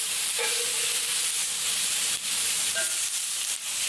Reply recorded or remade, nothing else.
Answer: remade